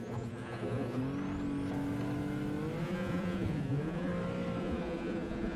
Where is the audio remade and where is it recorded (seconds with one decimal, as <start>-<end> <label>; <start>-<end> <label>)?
0.0-1.0 remade; 1.0-2.8 recorded; 2.8-4.1 remade; 4.1-4.6 recorded; 4.6-5.6 remade